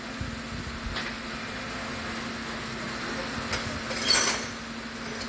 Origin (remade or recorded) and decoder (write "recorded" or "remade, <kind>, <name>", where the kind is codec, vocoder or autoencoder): recorded